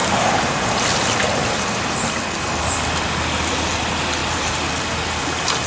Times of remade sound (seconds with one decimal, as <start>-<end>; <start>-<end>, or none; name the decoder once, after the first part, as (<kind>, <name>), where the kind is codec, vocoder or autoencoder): 0.0-0.6 (vocoder, BigVGAN v2); 1.4-2.2